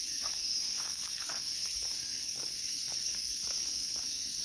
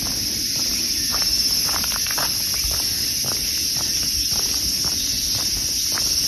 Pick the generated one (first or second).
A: first